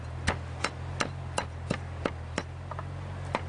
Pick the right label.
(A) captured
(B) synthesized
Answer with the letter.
A